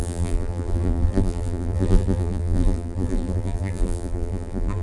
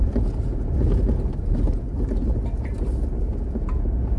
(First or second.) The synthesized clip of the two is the first